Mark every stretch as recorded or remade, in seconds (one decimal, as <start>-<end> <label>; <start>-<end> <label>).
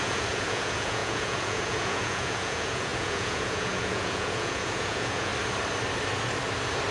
0.0-5.3 remade; 5.3-6.9 recorded